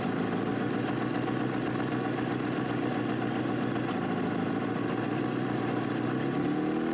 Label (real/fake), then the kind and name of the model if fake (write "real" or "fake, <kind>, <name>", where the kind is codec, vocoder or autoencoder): real